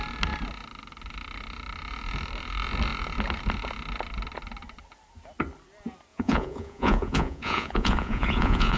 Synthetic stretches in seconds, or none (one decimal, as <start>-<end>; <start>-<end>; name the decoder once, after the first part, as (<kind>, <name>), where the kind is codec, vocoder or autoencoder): 6.1-8.8 (vocoder, Vocos)